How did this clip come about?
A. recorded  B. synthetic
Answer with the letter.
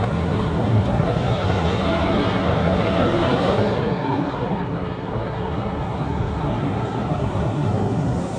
B